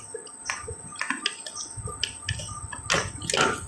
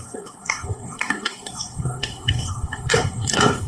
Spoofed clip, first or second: second